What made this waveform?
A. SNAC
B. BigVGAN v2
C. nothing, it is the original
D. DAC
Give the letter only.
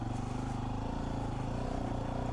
C